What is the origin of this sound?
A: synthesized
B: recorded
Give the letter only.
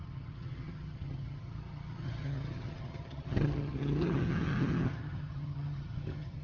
A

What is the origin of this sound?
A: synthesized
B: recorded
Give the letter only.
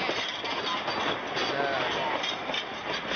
B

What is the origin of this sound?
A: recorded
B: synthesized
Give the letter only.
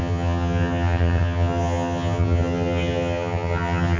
B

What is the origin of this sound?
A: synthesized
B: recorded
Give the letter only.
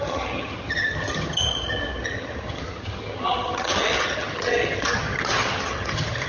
A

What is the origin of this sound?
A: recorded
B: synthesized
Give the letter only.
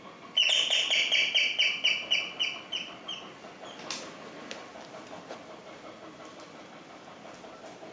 A